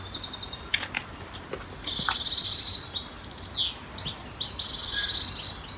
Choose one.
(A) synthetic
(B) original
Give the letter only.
B